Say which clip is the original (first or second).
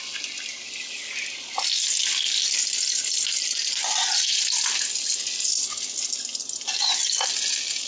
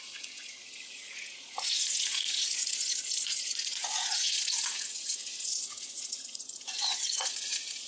first